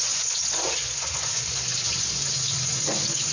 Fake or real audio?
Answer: fake